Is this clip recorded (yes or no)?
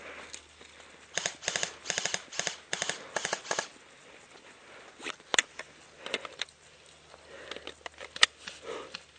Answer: yes